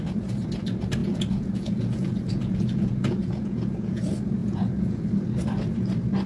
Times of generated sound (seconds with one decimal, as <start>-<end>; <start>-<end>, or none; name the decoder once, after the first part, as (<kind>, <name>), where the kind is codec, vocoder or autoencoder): 1.0-4.0 (vocoder, Vocos); 4.4-5.0